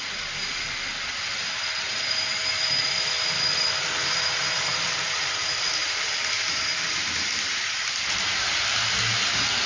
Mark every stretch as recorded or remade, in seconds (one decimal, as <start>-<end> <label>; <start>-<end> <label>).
0.0-9.7 recorded